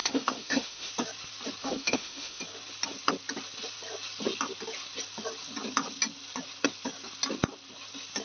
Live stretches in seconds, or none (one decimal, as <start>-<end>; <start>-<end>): 0.9-1.6; 2.4-8.2